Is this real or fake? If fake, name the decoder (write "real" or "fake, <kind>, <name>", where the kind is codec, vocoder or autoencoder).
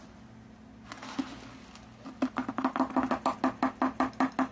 real